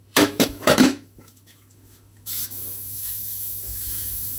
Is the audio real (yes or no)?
no